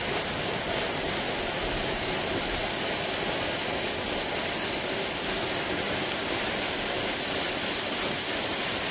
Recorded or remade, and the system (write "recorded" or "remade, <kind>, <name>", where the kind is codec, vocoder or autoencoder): recorded